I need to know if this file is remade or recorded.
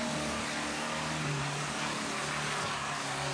remade